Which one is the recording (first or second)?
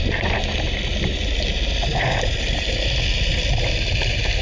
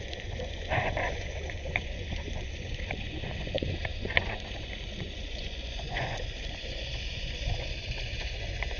first